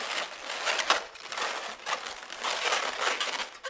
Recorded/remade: recorded